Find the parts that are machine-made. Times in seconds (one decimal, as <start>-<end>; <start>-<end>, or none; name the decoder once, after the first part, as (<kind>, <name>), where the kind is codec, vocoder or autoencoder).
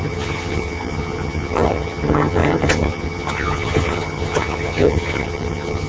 0.0-5.9 (vocoder, HiFi-GAN)